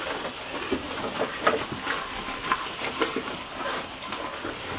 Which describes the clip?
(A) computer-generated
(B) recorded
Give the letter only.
B